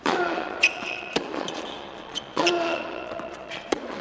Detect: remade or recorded remade